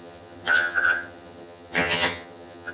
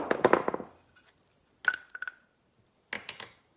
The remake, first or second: first